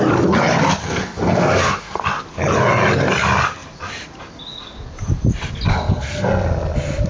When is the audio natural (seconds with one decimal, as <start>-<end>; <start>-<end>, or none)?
0.0-0.8; 2.0-5.7; 6.3-7.1